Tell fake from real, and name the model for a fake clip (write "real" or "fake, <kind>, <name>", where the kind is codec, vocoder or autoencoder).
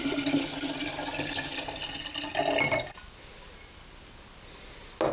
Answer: real